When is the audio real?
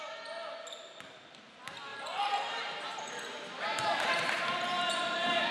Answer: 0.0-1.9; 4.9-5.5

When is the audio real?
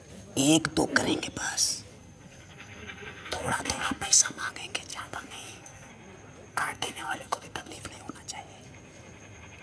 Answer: 0.0-1.9; 4.5-4.9; 5.9-6.5; 7.7-9.6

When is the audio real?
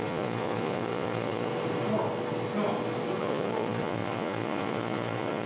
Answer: 1.5-3.2